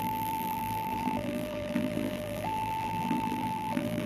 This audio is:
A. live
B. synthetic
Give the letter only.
B